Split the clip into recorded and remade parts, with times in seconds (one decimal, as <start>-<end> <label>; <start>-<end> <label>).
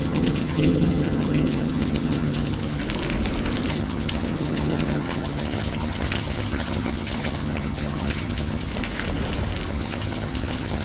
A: 0.0-2.8 remade; 2.8-3.7 recorded; 3.7-8.7 remade; 8.7-9.7 recorded; 9.7-10.8 remade